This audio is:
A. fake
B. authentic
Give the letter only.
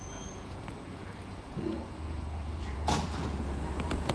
A